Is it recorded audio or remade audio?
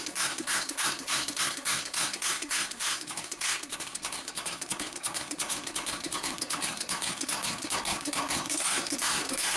remade